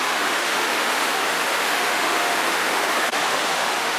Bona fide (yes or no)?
no